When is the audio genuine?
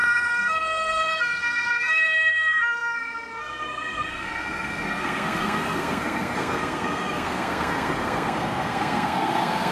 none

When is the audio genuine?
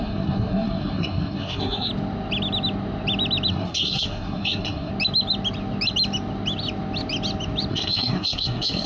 1.9-3.5; 4.9-7.7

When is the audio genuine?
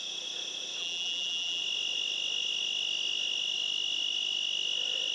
0.0-0.8; 1.6-5.1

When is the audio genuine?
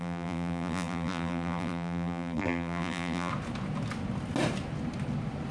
3.3-5.5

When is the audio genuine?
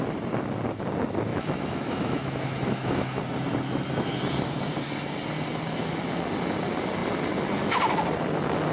0.0-1.3; 3.2-8.7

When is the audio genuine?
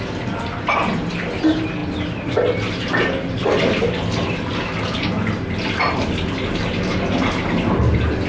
0.0-8.3